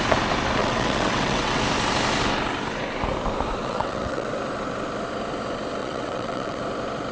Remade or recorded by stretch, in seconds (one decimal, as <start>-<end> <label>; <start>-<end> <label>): 0.0-0.6 recorded; 0.6-1.6 remade; 1.6-3.6 recorded; 3.6-4.3 remade; 4.3-5.8 recorded; 5.8-6.6 remade; 6.6-7.1 recorded